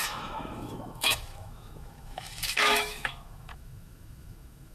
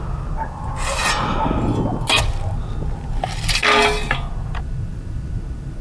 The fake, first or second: first